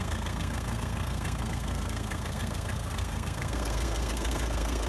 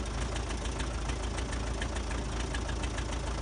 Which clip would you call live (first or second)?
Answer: second